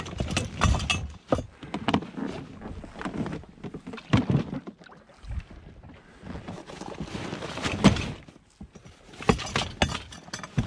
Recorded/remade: recorded